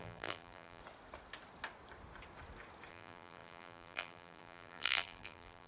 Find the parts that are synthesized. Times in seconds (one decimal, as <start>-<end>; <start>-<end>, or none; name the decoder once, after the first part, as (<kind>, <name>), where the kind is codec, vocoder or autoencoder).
0.0-0.8 (vocoder, BigVGAN v2); 2.9-5.7